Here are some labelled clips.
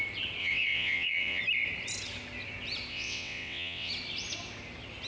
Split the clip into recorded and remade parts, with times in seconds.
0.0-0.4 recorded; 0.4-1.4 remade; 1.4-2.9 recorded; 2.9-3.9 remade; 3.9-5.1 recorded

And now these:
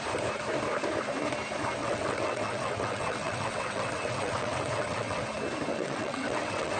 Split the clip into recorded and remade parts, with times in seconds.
0.0-1.8 recorded; 1.8-5.2 remade; 5.2-5.7 recorded; 5.7-6.8 remade

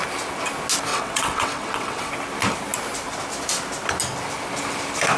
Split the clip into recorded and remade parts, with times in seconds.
0.0-0.9 recorded; 0.9-2.1 remade; 2.1-5.2 recorded